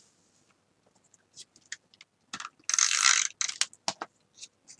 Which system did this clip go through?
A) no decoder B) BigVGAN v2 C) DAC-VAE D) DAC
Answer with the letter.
A